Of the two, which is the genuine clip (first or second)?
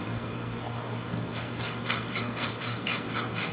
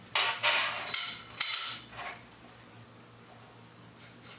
second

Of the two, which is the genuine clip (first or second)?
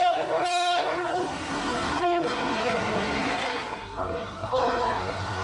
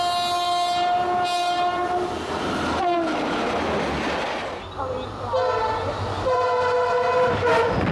second